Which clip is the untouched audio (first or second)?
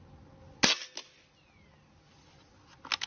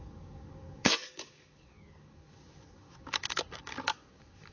first